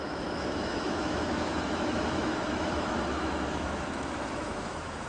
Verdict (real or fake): fake